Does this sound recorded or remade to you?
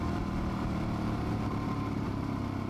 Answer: recorded